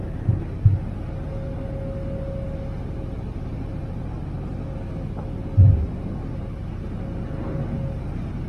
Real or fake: real